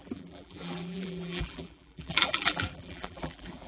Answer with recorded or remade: remade